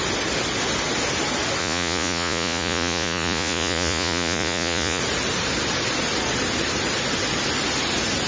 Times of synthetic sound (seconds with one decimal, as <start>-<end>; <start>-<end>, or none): 1.6-5.0